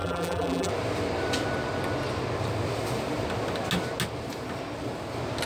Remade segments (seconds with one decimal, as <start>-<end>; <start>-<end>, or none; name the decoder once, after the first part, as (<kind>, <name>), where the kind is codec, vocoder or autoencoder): 0.0-0.7 (vocoder, BigVGAN v2)